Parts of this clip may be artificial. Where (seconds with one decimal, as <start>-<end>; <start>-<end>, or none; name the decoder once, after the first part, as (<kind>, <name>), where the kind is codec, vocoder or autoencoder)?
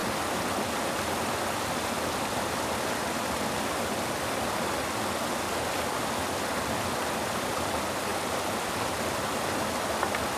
none